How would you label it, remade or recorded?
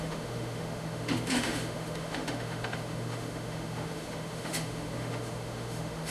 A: remade